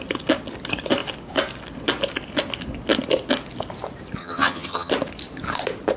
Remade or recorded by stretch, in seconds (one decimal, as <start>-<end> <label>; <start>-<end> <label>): 0.0-4.2 recorded; 4.2-4.9 remade; 4.9-6.0 recorded